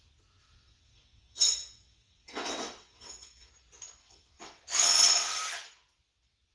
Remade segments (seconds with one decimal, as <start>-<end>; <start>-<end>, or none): 0.4-3.5; 4.0-5.4